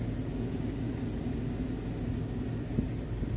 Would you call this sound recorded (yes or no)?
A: yes